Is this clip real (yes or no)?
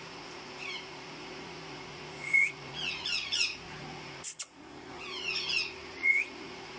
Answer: no